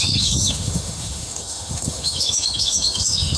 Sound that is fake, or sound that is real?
fake